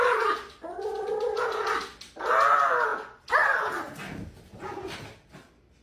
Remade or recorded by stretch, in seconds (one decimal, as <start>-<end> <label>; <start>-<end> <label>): 0.0-5.8 recorded